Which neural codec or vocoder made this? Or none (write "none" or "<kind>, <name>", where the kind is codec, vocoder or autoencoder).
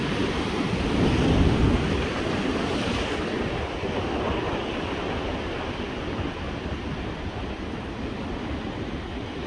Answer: none